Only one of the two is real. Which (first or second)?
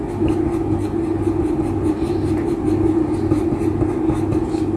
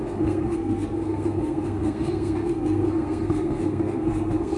first